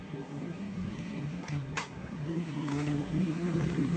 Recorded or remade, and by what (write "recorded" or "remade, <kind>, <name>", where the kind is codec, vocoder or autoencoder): remade, codec, SNAC